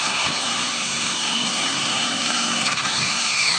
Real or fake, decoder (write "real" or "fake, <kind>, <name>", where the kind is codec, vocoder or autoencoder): fake, codec, SNAC